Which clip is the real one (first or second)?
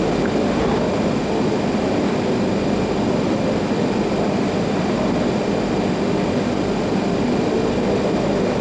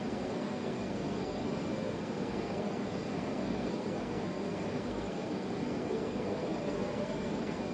first